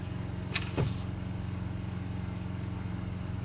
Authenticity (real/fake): fake